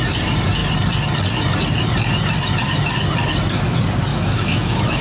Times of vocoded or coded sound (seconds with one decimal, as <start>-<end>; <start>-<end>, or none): 4.1-5.0